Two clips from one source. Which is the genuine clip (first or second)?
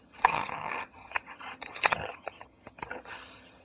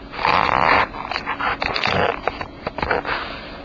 second